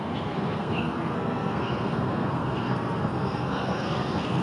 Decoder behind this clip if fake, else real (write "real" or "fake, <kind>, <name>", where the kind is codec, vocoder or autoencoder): fake, codec, SNAC